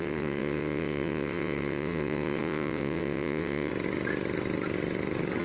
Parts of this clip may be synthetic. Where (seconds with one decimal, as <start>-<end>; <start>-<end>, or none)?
0.0-3.7